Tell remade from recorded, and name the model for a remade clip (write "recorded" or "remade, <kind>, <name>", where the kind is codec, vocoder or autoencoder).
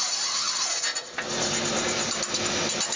recorded